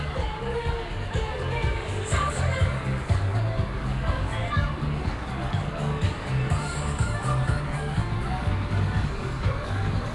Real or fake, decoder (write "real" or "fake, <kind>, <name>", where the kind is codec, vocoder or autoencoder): fake, codec, DAC